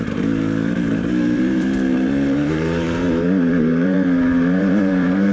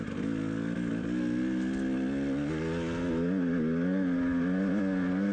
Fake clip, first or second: first